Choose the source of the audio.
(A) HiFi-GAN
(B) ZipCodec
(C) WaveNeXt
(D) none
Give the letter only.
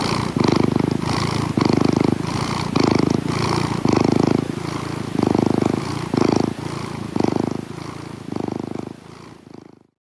D